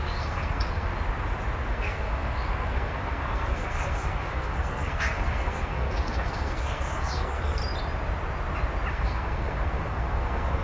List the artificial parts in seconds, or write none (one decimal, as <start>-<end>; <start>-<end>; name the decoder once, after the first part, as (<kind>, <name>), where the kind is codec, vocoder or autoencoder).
0.0-0.9 (codec, SNAC); 1.7-7.6; 8.9-10.6